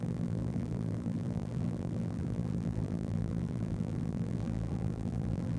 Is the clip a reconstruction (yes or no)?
yes